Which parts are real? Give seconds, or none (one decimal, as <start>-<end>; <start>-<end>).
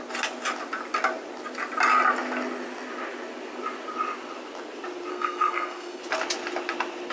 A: 0.0-5.1; 6.0-7.1